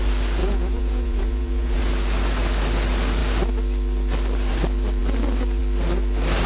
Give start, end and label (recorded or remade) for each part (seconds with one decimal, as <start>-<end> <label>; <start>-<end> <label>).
0.0-0.4 recorded; 0.4-1.8 remade; 1.8-6.5 recorded